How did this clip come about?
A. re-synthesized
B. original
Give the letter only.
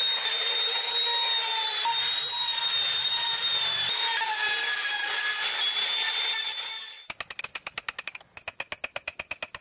B